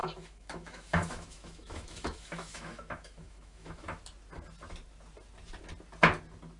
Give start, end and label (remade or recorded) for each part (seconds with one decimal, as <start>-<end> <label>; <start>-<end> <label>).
0.0-4.0 remade; 4.0-6.6 recorded